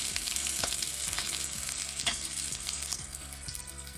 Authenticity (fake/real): fake